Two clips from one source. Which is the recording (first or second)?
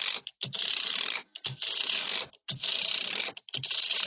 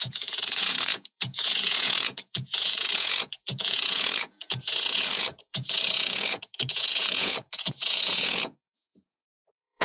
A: first